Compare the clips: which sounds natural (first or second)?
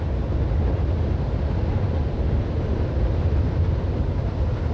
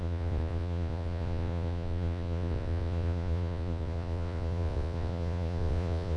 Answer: first